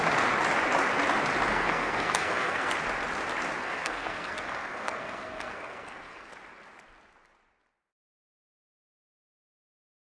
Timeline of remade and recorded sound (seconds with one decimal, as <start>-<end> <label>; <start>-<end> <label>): 0.0-1.5 recorded; 1.5-2.7 remade; 2.7-3.6 recorded; 3.6-6.3 remade; 6.3-10.2 recorded